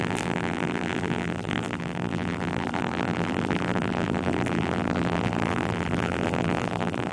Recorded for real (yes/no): no